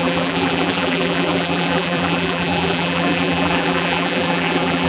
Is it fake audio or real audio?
fake